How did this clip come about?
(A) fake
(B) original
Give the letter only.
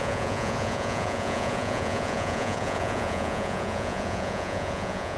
A